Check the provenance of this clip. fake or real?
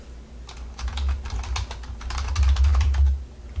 real